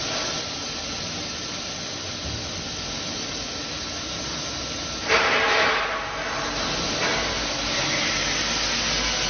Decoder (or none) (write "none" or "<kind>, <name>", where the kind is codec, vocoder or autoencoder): none